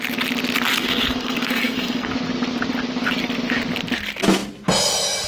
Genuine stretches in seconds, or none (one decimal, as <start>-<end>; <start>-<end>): 0.0-0.7; 2.1-5.3